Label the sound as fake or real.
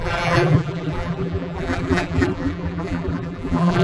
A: fake